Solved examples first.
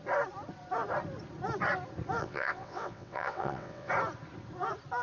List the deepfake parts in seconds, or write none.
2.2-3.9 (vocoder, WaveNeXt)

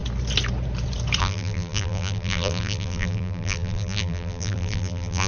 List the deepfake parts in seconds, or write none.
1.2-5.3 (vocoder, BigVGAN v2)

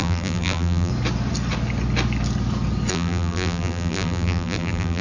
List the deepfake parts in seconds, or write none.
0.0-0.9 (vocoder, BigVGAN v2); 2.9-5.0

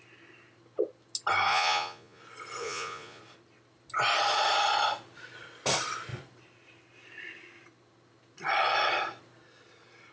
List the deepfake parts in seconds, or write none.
1.5-2.2 (vocoder, Vocos); 2.6-3.2

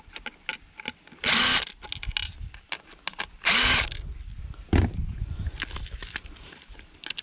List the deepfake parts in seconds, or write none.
none

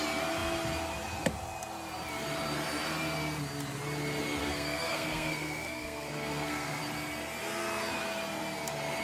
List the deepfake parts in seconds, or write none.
4.4-6.8 (codec, SNAC)

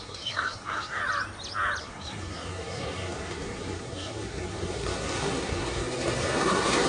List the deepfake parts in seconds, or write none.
0.0-1.0 (codec, SNAC); 1.8-6.9